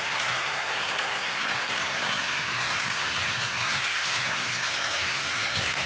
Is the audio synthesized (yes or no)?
yes